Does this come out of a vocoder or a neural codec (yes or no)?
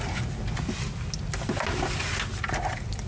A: no